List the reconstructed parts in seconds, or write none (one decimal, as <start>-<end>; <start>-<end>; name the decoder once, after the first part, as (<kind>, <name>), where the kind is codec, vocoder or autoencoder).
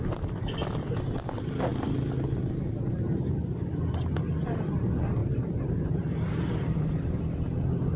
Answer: 5.2-7.2 (vocoder, BigVGAN v2)